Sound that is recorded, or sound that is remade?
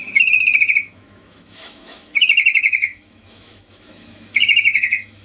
remade